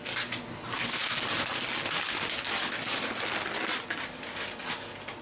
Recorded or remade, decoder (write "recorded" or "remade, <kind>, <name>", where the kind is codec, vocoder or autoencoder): recorded